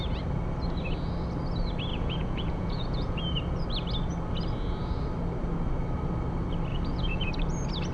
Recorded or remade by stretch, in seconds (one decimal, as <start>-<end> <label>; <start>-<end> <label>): 0.0-1.9 recorded; 1.9-3.2 remade; 3.2-6.7 recorded; 6.7-7.3 remade; 7.3-7.9 recorded